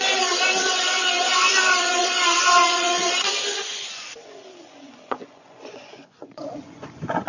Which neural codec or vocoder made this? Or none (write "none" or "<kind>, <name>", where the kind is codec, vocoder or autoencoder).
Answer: vocoder, Vocos